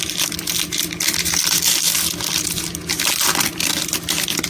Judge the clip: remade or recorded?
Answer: recorded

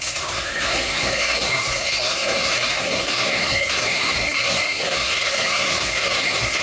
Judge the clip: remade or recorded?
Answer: remade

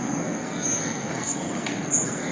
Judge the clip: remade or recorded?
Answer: remade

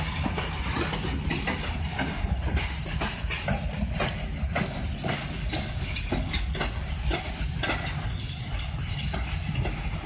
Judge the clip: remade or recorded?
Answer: recorded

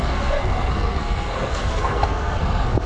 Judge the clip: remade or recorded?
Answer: remade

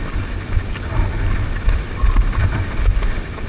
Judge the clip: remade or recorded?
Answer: recorded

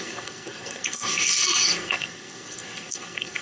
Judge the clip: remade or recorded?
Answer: remade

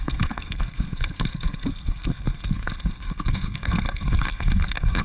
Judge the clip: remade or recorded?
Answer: remade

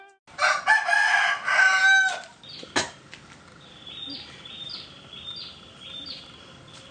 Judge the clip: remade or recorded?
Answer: recorded